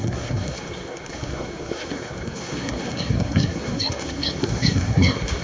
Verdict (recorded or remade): remade